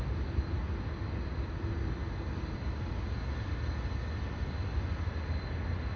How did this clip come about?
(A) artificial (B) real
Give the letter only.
B